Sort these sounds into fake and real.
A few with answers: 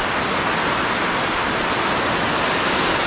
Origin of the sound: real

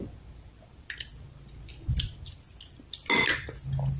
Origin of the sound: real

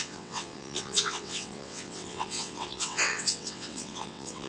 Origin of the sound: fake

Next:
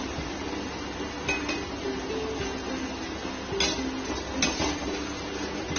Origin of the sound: real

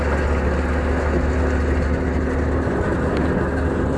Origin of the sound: real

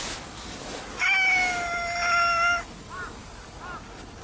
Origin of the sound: real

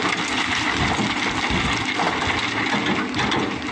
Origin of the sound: real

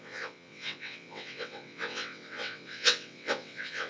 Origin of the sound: fake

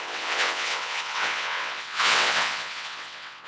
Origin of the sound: fake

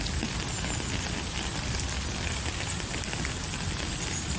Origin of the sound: real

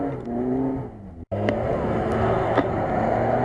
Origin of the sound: real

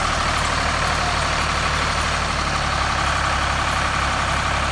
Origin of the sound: real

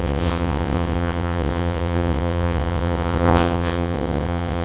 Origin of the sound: fake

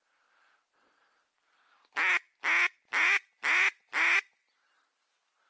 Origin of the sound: real